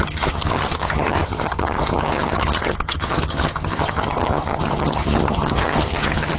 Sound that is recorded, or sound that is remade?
remade